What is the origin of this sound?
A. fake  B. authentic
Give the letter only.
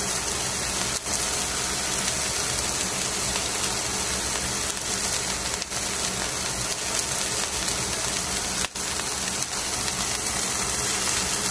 B